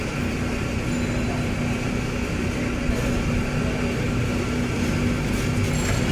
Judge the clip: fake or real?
real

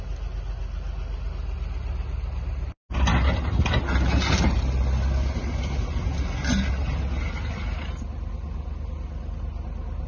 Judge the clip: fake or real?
real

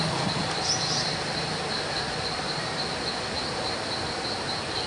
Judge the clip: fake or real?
fake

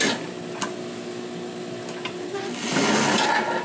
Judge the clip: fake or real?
real